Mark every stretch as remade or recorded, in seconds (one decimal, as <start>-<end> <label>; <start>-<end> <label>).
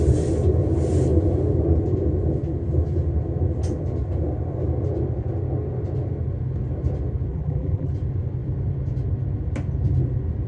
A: 0.0-7.3 recorded; 7.3-7.9 remade; 7.9-10.5 recorded